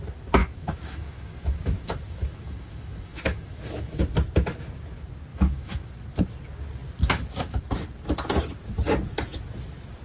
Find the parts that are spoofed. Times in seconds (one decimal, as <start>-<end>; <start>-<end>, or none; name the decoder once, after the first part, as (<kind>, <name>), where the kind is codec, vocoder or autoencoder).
0.4-4.0 (autoencoder, DAC-VAE); 5.3-5.9